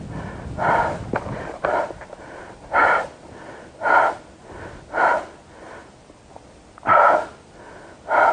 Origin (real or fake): real